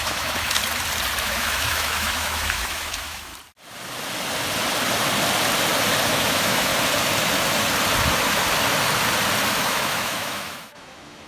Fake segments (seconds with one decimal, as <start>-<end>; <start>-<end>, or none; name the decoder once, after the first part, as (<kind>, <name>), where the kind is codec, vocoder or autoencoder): 0.0-0.6 (autoencoder, DAC-VAE); 1.2-3.3; 6.1-6.7; 9.5-11.3